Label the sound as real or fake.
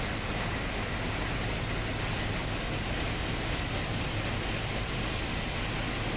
real